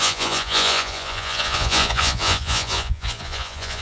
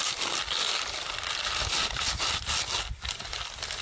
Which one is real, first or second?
second